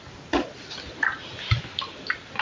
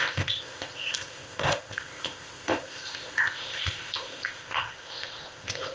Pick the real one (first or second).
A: first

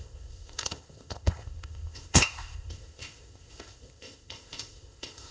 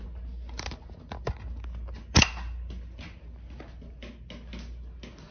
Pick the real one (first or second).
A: second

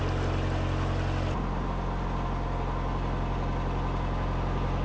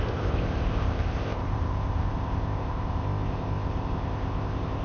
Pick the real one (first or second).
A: first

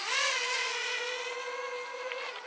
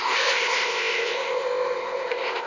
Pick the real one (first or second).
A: first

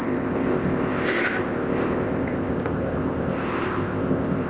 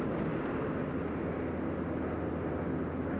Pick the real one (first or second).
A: second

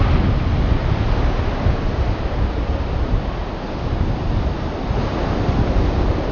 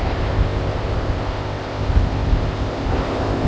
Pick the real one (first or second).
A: first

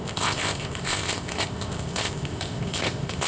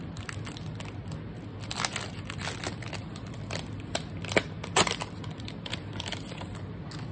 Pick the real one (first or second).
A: second